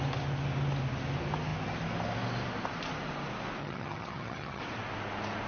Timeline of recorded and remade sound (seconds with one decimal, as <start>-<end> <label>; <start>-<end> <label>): 0.0-3.6 recorded; 3.6-4.6 remade; 4.6-5.5 recorded